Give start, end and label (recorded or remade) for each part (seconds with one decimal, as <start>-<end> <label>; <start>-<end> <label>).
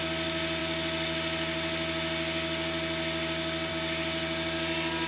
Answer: 0.0-5.1 recorded